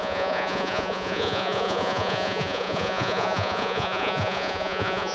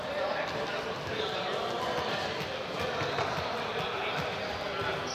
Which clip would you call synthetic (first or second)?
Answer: first